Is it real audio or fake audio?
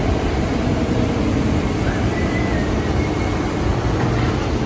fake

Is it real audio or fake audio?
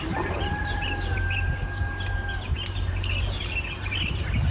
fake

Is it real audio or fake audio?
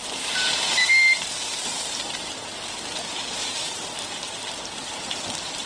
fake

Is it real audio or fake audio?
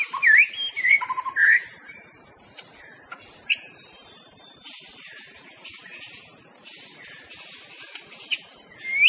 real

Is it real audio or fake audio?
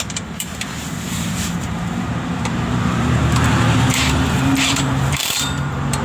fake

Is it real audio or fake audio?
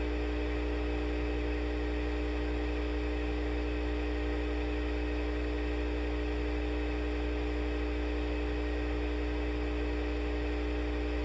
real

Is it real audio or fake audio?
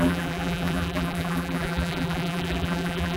fake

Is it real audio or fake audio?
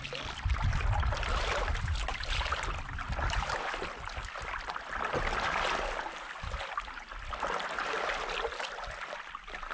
real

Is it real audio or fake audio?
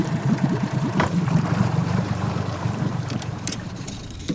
fake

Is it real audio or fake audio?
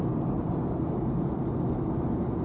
real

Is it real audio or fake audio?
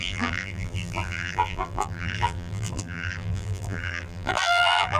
fake